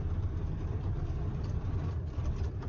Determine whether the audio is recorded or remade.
remade